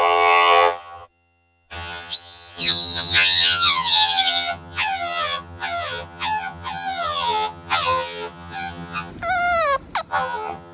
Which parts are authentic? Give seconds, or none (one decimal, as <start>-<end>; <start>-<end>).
9.1-10.1

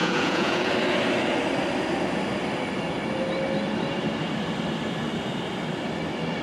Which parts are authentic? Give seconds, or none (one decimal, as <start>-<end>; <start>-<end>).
0.7-6.4

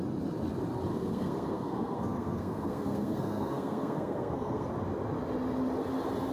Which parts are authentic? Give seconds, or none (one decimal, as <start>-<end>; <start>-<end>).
0.0-0.9; 4.7-6.3

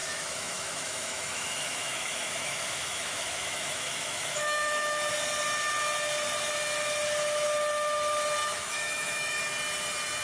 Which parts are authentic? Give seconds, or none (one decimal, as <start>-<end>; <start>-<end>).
5.1-8.4; 9.4-10.2

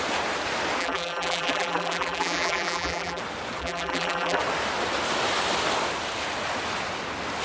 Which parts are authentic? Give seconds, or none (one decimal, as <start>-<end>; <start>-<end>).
0.0-0.8; 3.2-3.6; 4.4-7.4

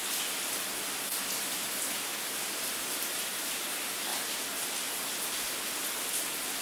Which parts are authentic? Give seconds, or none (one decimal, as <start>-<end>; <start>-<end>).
0.0-1.4; 2.1-2.8; 4.1-6.1

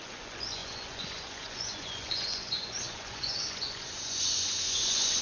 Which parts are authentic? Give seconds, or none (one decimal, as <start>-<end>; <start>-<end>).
none